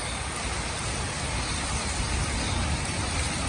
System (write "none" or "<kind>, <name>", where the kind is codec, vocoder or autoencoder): none